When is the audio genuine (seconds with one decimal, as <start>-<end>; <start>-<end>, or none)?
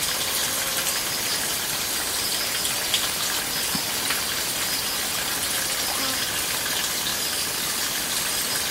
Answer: 0.0-7.1; 7.8-8.7